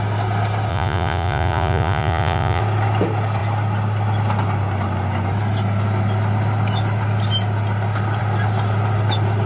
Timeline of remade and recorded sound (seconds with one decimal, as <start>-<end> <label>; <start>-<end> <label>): 0.0-0.7 recorded; 0.7-2.6 remade; 2.6-9.5 recorded